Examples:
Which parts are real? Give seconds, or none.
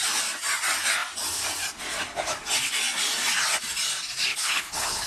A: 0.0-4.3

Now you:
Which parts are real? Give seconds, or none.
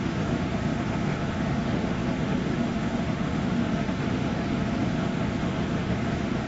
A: none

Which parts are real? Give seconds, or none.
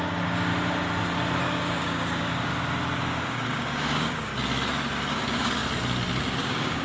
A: 0.5-1.4; 2.5-3.0; 4.3-5.1; 5.6-6.2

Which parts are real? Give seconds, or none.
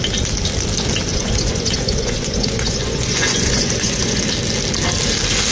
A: 0.0-1.1; 4.2-5.5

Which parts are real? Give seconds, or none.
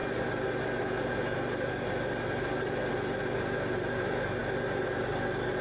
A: 0.0-5.6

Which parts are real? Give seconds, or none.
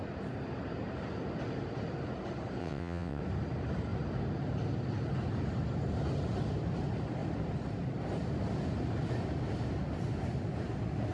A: 0.0-2.6; 3.2-11.1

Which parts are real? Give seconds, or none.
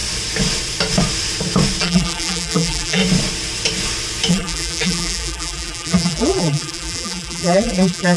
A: 0.0-1.8; 3.0-4.3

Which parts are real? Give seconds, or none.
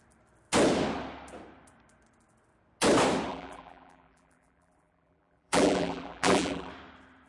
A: 0.0-3.3; 6.7-7.3